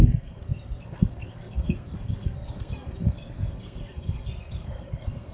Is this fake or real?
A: fake